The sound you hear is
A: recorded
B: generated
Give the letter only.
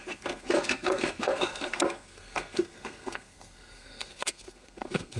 B